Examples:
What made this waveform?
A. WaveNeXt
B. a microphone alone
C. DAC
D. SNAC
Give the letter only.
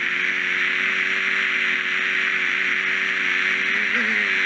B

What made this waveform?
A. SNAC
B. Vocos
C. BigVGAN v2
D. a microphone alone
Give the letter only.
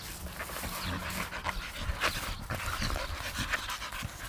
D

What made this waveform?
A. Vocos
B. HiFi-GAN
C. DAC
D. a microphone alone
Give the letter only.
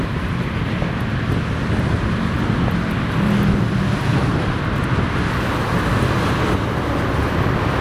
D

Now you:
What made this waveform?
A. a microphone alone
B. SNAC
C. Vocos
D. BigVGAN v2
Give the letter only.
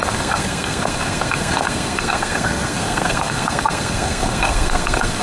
B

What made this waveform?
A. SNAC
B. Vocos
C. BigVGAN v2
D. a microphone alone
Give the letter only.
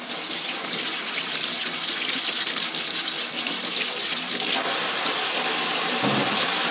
D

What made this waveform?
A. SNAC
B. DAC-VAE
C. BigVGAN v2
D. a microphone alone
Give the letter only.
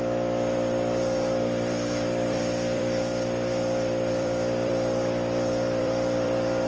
C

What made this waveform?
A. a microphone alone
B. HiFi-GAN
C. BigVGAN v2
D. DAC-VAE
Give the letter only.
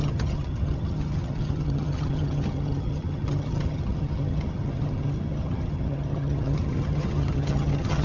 B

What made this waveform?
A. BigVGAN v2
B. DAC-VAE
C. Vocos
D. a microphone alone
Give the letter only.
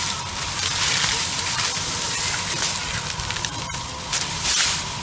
A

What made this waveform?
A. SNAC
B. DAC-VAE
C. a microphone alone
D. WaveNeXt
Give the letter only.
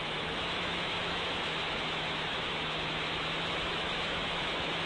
B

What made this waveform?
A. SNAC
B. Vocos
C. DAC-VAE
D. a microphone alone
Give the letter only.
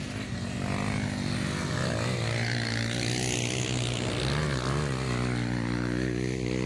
D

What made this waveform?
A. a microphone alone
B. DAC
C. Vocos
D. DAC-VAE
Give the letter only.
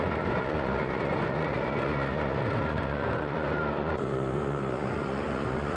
C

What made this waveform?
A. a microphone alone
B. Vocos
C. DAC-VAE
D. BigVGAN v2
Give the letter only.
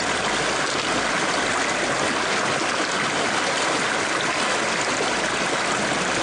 A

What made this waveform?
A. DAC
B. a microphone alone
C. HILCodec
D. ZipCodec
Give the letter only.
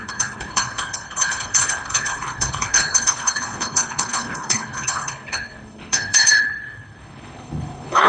C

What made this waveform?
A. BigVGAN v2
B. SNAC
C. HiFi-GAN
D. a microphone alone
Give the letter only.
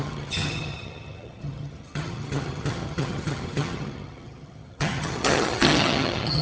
C